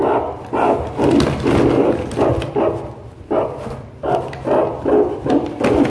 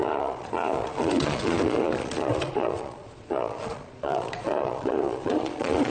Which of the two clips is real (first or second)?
first